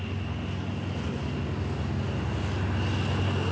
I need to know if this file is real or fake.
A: real